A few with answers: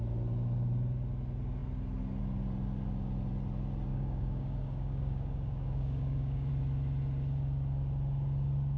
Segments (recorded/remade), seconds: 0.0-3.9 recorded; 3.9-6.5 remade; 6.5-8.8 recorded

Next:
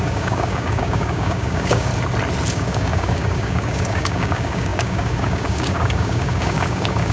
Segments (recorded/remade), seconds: 0.0-1.9 remade; 1.9-2.5 recorded; 2.5-7.1 remade

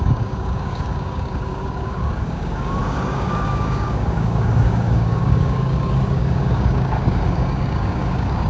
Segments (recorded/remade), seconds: 0.0-8.5 remade

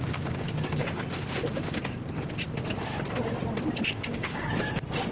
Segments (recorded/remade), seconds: 0.0-0.8 remade; 0.8-3.9 recorded; 3.9-5.1 remade

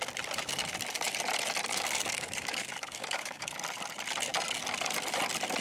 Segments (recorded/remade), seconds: 0.0-1.7 recorded; 1.7-3.5 remade; 3.5-5.6 recorded

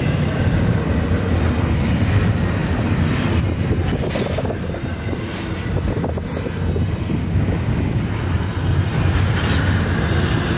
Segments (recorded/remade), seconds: 0.0-7.2 recorded; 7.2-8.0 remade; 8.0-10.6 recorded

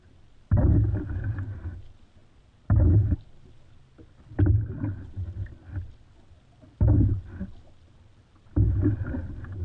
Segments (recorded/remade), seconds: 0.0-9.6 recorded